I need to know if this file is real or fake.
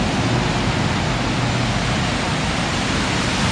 real